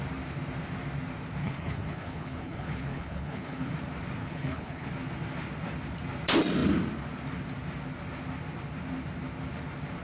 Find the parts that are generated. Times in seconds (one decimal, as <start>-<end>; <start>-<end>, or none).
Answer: 1.4-3.7; 4.2-4.9